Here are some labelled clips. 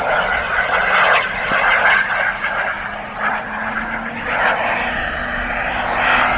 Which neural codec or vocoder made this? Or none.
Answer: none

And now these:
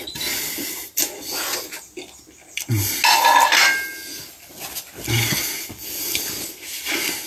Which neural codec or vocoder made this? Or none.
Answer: none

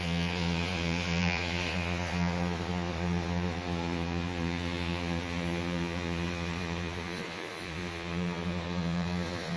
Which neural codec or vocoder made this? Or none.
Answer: vocoder, Vocos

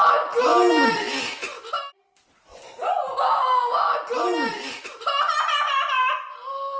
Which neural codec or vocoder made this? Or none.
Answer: none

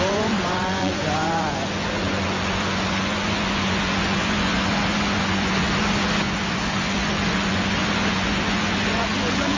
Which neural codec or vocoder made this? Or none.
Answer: vocoder, Vocos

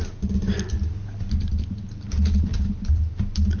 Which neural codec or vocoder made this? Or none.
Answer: none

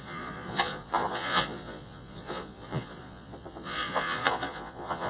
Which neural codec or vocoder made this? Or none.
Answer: vocoder, Vocos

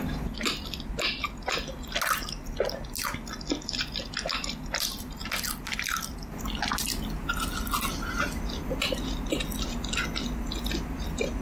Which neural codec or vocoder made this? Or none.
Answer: none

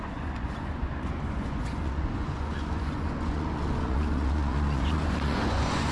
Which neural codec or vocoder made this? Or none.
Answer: vocoder, Vocos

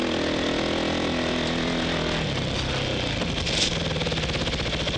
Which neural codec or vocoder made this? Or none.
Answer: none